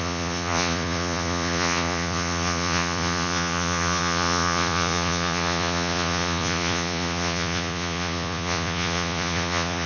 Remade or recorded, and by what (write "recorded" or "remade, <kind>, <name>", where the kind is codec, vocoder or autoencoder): remade, vocoder, Vocos